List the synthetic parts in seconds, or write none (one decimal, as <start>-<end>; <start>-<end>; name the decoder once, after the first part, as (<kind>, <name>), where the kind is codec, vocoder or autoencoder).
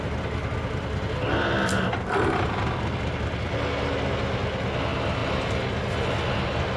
none